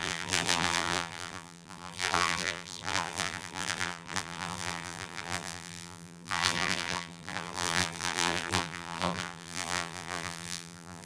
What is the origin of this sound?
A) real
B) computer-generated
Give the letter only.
B